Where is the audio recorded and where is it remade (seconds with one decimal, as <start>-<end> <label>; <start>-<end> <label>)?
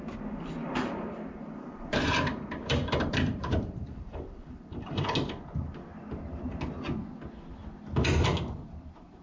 0.0-0.6 recorded; 0.6-5.0 remade; 5.0-9.2 recorded